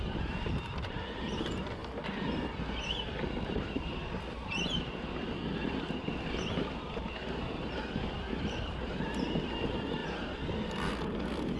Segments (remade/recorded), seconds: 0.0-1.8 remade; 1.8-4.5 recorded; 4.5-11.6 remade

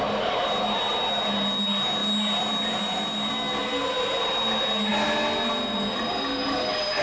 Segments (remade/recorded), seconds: 0.0-7.0 recorded

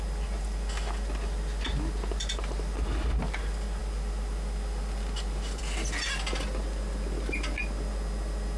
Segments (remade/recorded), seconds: 0.0-8.6 recorded